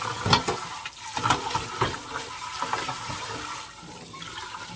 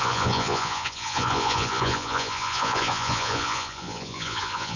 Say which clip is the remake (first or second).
second